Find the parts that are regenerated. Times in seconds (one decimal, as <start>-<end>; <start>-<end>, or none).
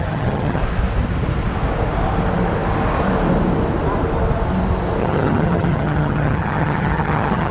0.0-0.6; 5.0-7.5